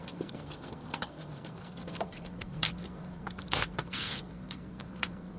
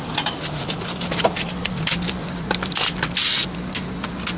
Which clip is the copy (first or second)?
first